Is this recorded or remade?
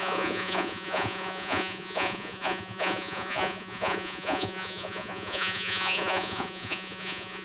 remade